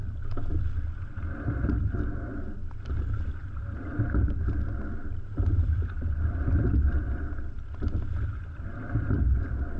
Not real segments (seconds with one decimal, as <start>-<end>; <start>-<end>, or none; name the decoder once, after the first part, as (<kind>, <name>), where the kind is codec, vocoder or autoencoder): none